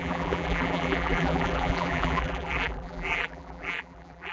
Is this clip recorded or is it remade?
remade